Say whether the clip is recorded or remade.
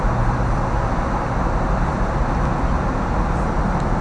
recorded